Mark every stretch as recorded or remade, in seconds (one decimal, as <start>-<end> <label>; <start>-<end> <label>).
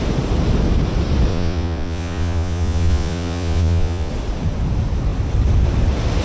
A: 0.0-1.3 recorded; 1.3-4.1 remade; 4.1-6.2 recorded